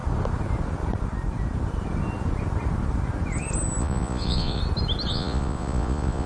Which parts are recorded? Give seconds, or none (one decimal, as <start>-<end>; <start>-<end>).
0.0-3.8; 4.6-5.1